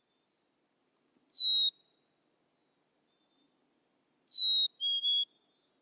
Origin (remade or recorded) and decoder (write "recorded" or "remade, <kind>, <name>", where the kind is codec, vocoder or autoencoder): recorded